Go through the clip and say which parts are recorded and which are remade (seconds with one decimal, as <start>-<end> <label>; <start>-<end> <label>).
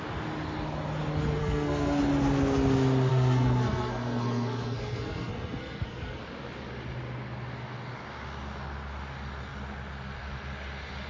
0.0-1.4 recorded; 1.4-2.0 remade; 2.0-3.1 recorded; 3.1-6.2 remade; 6.2-11.1 recorded